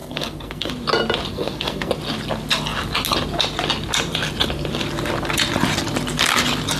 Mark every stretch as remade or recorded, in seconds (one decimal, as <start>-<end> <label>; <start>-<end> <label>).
0.0-0.7 remade; 0.7-1.3 recorded; 1.3-1.9 remade; 1.9-6.8 recorded